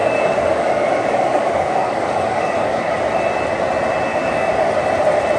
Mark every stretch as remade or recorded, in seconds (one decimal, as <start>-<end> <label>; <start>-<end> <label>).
0.0-2.9 remade; 2.9-4.1 recorded; 4.1-4.7 remade; 4.7-5.4 recorded